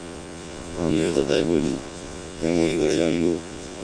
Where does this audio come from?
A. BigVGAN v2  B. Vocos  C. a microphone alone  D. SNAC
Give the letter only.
B